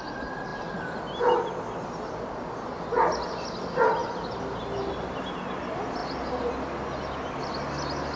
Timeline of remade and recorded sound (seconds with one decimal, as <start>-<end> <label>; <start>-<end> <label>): 0.0-8.2 recorded